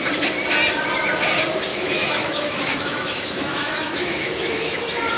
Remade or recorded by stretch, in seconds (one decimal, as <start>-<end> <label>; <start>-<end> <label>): 0.0-1.7 recorded; 1.7-4.8 remade; 4.8-5.2 recorded